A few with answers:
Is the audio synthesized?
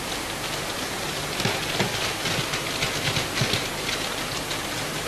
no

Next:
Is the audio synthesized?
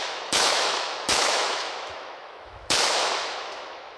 yes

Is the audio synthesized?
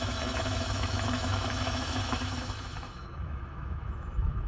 yes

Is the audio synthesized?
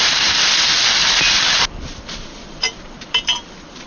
no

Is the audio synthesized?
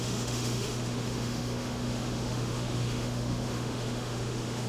yes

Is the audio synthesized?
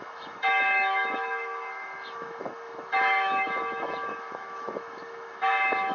yes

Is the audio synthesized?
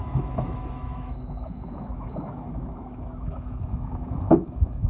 yes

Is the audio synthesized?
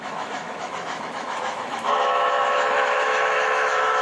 yes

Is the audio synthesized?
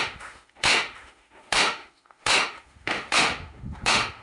yes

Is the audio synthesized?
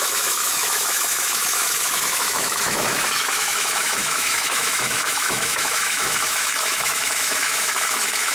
yes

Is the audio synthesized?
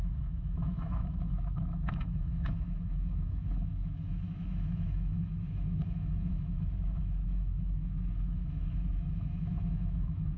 yes